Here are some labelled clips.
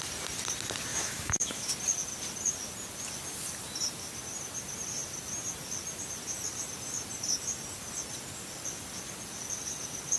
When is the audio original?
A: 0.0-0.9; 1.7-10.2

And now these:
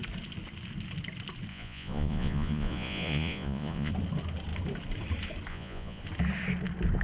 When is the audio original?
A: 0.0-1.5; 3.9-5.5; 6.0-7.0

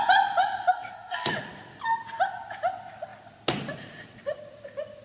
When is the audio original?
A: 0.0-0.7; 1.3-5.0

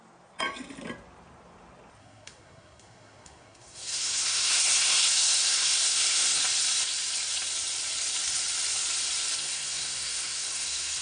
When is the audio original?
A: 0.0-2.0; 6.4-9.4

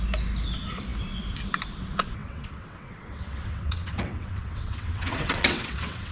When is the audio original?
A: 0.0-2.2

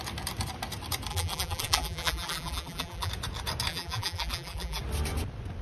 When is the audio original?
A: 0.0-1.1; 3.1-3.7; 4.8-5.6

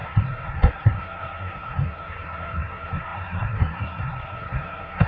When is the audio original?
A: none

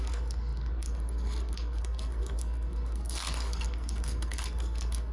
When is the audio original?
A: none